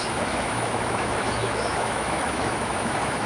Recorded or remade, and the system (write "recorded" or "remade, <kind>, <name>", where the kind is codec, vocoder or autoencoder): remade, autoencoder, DAC-VAE